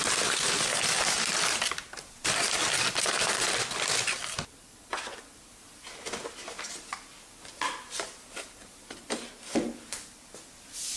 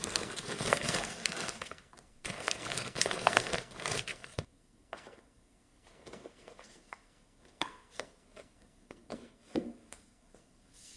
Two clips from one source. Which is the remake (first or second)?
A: second